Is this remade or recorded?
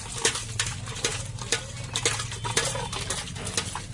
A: recorded